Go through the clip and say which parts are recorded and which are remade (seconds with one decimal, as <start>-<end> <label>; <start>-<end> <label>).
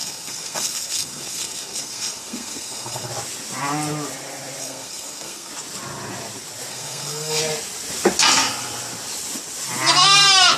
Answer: 0.0-3.1 remade; 3.1-4.6 recorded; 4.6-5.5 remade; 5.5-6.7 recorded; 6.7-7.4 remade; 7.4-10.6 recorded